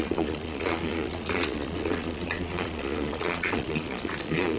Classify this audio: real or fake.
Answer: fake